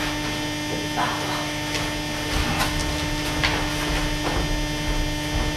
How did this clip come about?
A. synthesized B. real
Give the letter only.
B